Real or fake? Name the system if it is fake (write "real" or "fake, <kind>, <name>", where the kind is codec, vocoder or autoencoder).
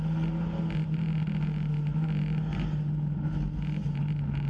real